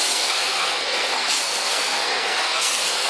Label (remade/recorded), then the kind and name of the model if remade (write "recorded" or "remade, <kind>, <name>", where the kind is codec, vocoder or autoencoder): remade, codec, SNAC